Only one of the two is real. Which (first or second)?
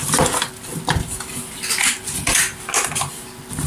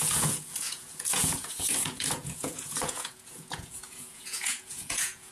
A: first